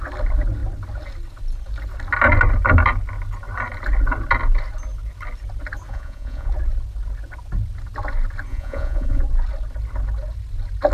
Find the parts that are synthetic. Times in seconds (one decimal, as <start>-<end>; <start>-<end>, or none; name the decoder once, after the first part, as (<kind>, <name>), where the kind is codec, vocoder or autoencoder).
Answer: 5.9-6.5 (vocoder, Vocos); 8.5-9.2